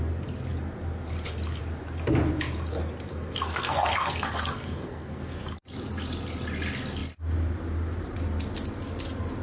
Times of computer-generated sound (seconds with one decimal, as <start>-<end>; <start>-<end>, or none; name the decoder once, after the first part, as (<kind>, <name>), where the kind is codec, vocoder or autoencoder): 3.1-5.4 (codec, SNAC)